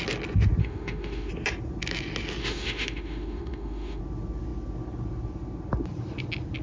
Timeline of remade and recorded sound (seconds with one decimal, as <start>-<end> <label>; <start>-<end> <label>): 0.0-0.6 recorded; 0.6-1.3 remade; 1.3-2.4 recorded; 2.4-4.0 remade; 4.0-6.6 recorded